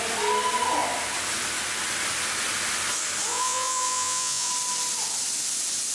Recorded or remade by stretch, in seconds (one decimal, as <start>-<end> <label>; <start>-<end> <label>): 0.0-3.3 recorded; 3.3-4.5 remade; 4.5-5.9 recorded